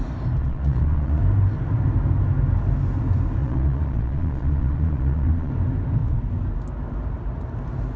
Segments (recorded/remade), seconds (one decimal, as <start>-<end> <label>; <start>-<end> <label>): 0.0-0.4 recorded; 0.4-1.2 remade; 1.2-3.4 recorded; 3.4-5.5 remade; 5.5-8.0 recorded